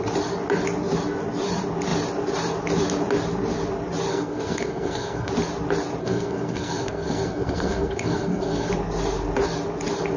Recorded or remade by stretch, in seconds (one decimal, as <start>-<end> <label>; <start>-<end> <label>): 0.0-4.1 recorded; 4.1-5.3 remade; 5.3-6.0 recorded; 6.0-8.7 remade; 8.7-10.2 recorded